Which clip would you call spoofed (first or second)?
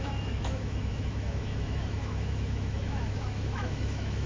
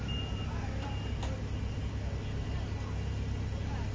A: first